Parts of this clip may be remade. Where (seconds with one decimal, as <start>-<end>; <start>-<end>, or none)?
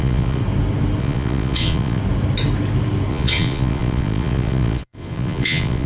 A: 0.0-0.4; 1.0-2.0; 3.1-5.9